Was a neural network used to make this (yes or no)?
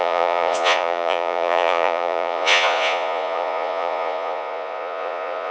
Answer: yes